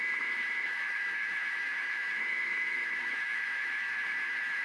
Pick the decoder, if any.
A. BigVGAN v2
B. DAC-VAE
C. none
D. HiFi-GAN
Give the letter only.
B